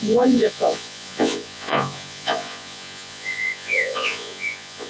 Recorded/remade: remade